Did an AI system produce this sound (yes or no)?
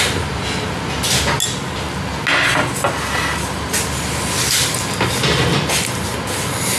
no